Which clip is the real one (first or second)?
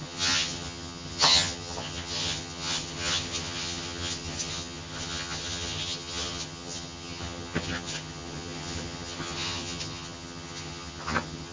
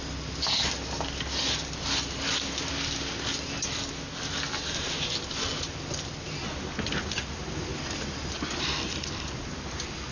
second